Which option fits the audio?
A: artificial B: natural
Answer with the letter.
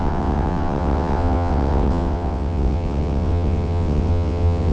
A